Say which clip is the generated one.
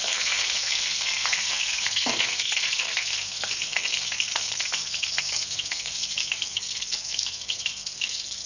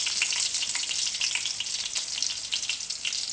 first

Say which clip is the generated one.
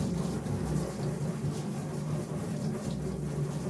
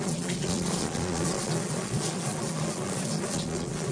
second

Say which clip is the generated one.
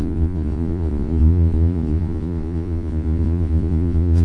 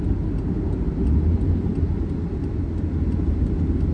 first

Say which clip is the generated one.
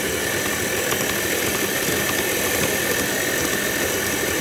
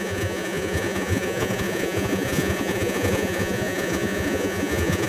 second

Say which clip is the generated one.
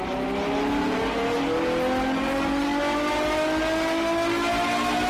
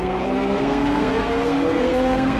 second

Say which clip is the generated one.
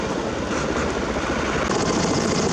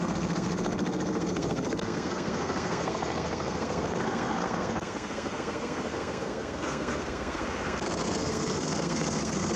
second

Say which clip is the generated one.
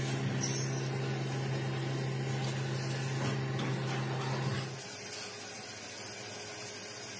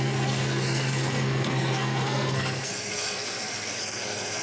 second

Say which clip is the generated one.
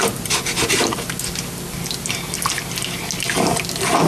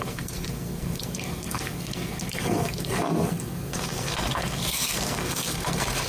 second